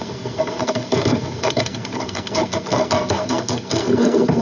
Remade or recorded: remade